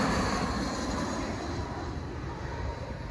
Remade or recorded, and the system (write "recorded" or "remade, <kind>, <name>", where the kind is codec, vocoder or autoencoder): recorded